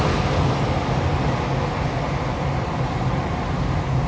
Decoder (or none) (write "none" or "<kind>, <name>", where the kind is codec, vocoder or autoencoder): none